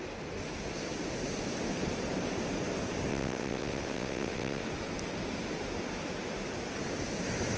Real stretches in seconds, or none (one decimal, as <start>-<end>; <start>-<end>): 0.0-3.1; 4.7-7.6